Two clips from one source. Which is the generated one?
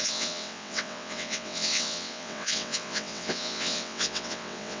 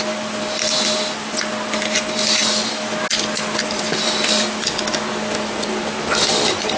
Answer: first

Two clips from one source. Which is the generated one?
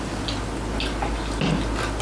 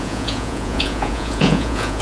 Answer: second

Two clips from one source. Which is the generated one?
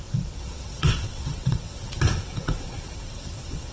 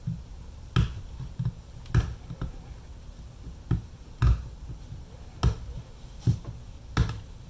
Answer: first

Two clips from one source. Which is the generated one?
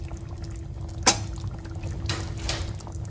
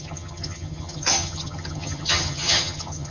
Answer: second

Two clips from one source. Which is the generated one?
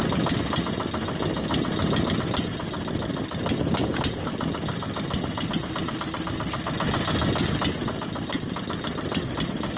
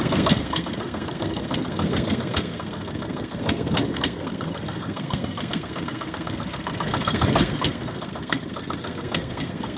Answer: second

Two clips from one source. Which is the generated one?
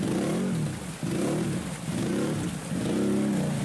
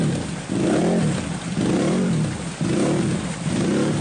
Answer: second